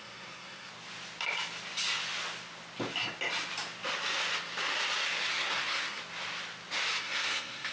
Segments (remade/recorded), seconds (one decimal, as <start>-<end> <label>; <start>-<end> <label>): 0.0-0.7 remade; 0.7-5.3 recorded; 5.3-6.0 remade; 6.0-7.0 recorded; 7.0-7.7 remade